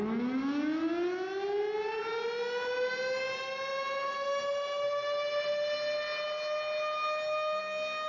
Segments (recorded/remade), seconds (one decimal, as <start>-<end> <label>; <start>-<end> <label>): 0.0-8.1 recorded

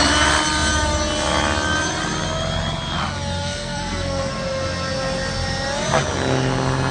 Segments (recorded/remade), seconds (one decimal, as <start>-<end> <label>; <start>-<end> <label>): 0.0-3.4 recorded; 3.4-4.3 remade; 4.3-6.9 recorded

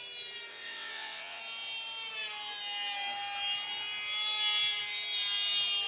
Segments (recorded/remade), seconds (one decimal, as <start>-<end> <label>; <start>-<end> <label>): 0.0-0.5 recorded; 0.5-1.4 remade; 1.4-5.9 recorded

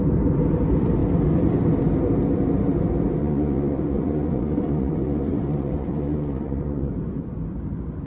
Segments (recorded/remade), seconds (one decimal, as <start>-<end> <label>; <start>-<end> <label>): 0.0-3.2 recorded; 3.2-6.9 remade; 6.9-8.1 recorded